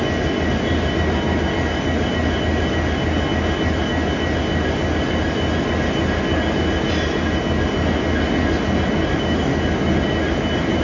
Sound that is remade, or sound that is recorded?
recorded